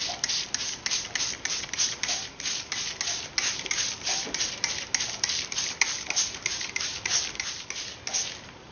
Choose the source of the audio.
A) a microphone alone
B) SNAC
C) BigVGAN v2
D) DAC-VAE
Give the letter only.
A